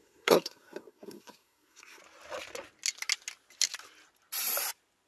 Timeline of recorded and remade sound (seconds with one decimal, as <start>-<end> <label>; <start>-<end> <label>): 0.0-2.0 remade; 2.0-5.1 recorded